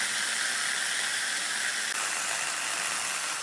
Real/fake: real